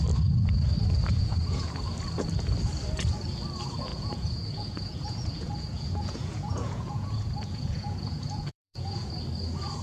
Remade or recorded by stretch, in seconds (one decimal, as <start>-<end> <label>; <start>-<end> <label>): 0.0-1.1 recorded; 1.1-1.7 remade; 1.7-3.9 recorded; 3.9-9.1 remade; 9.1-9.8 recorded